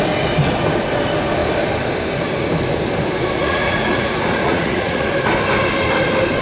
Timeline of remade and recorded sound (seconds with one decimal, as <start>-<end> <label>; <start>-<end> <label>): 0.0-3.4 recorded; 3.4-5.1 remade; 5.1-6.4 recorded